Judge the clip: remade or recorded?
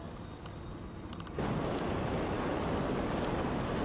recorded